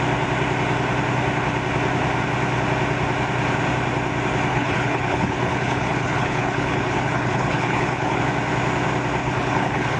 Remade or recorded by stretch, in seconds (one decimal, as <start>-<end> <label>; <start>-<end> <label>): 0.0-4.5 recorded; 4.5-8.2 remade; 8.2-9.2 recorded; 9.2-10.0 remade